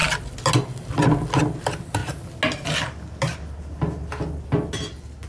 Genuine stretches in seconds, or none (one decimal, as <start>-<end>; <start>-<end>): 0.0-5.3